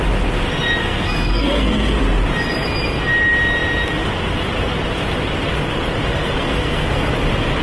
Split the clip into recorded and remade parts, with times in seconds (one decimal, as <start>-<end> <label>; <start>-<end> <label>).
0.0-0.8 recorded; 0.8-2.0 remade; 2.0-6.2 recorded; 6.2-7.1 remade; 7.1-7.6 recorded